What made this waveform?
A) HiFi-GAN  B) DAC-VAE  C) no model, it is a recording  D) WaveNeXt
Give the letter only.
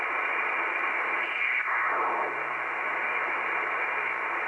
C